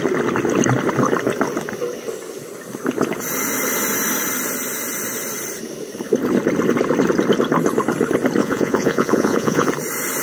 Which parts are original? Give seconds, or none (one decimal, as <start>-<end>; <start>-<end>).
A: 0.0-8.4; 9.7-10.2